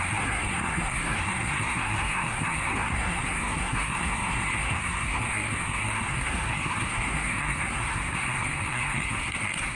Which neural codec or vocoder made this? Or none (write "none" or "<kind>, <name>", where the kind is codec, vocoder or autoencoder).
codec, SNAC